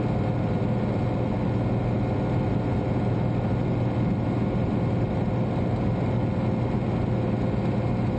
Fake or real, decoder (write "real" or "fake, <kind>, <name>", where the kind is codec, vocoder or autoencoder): real